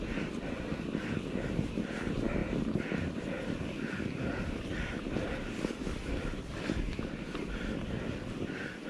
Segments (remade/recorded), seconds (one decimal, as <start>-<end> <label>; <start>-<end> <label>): 0.0-8.9 recorded

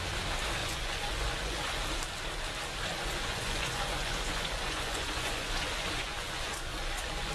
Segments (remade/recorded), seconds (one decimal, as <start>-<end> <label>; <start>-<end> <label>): 0.0-0.6 recorded; 0.6-1.8 remade; 1.8-2.9 recorded; 2.9-7.3 remade

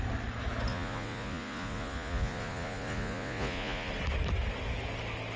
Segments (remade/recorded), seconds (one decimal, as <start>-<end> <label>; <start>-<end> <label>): 0.0-0.7 recorded; 0.7-3.9 remade; 3.9-5.4 recorded

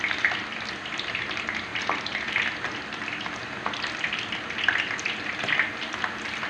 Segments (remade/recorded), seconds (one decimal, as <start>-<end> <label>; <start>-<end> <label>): 0.0-1.7 recorded; 1.7-3.9 remade; 3.9-6.5 recorded